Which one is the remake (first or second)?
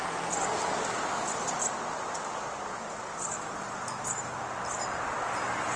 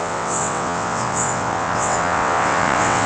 second